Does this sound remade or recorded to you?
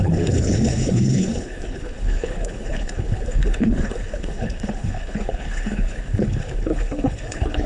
remade